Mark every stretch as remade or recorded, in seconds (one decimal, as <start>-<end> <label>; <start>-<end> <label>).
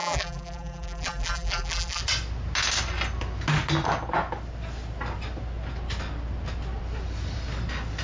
0.0-2.0 remade; 2.0-8.0 recorded